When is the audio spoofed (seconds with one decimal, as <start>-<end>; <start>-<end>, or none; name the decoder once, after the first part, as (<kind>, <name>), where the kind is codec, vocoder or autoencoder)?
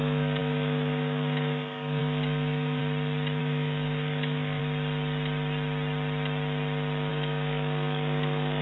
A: 0.0-2.8 (codec, DAC); 3.4-4.6; 7.1-8.6